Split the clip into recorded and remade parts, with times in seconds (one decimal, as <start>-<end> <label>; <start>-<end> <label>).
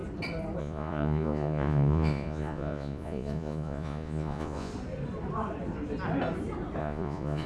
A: 0.0-0.6 recorded; 0.6-4.7 remade; 4.7-6.8 recorded; 6.8-7.5 remade